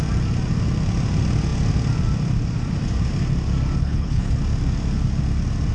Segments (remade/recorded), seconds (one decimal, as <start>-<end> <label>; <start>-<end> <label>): 0.0-3.8 recorded; 3.8-4.4 remade; 4.4-5.7 recorded